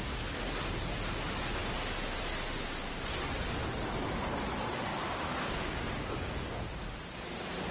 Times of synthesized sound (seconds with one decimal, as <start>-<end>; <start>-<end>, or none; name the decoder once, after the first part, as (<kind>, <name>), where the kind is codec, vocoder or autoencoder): 4.9-6.6 (codec, DAC)